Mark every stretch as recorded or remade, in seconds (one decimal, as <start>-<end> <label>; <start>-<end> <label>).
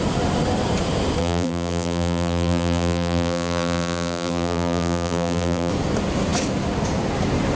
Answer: 0.0-1.2 recorded; 1.2-5.7 remade; 5.7-7.5 recorded